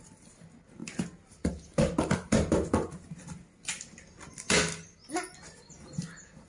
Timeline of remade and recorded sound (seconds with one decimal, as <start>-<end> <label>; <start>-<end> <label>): 0.0-6.5 recorded